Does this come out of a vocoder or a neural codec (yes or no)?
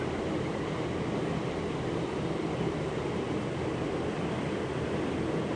no